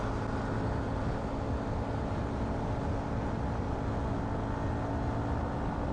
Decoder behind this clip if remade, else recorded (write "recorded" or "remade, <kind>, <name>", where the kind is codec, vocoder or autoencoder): recorded